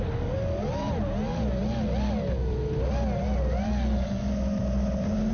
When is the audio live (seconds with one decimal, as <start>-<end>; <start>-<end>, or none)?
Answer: 0.0-5.3